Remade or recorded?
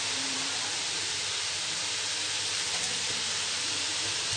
remade